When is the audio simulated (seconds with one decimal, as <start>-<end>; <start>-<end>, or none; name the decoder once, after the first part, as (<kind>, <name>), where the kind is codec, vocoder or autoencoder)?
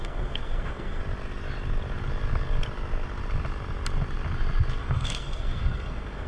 0.0-1.0 (codec, SNAC); 4.8-6.3